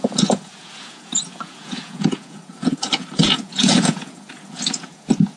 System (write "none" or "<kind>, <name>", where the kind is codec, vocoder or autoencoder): vocoder, Vocos